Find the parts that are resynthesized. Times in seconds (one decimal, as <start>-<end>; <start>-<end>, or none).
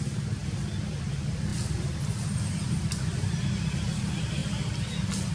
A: 1.5-3.7; 4.4-5.3